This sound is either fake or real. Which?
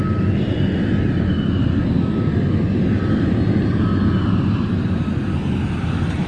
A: real